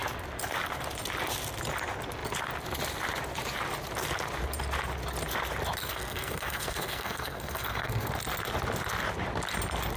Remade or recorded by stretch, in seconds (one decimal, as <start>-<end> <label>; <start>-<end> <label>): 0.0-5.8 recorded; 5.8-8.1 remade; 8.1-10.0 recorded